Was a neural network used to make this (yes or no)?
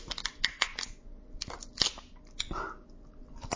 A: no